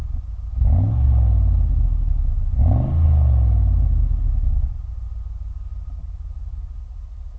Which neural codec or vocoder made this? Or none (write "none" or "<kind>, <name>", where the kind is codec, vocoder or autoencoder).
none